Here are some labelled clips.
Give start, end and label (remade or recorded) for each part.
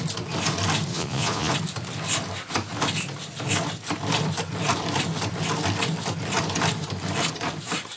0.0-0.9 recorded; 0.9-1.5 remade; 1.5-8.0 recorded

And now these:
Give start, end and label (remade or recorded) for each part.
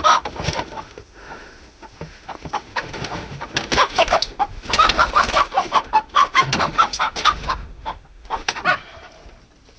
0.0-8.6 remade; 8.6-9.8 recorded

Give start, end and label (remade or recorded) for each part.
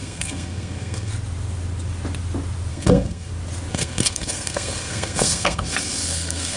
0.0-1.1 remade; 1.1-2.7 recorded; 2.7-3.3 remade; 3.3-3.7 recorded; 3.7-6.6 remade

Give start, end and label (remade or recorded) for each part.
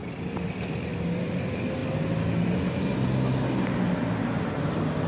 0.0-0.9 remade; 0.9-5.1 recorded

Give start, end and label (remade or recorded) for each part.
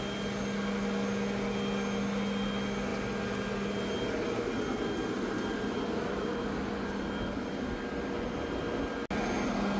0.0-9.8 recorded